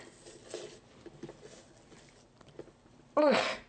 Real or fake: real